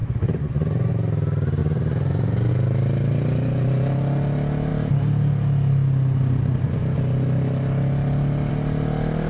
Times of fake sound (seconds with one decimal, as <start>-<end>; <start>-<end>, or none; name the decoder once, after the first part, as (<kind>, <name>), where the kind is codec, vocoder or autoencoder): 0.0-0.9 (vocoder, Vocos); 1.6-2.5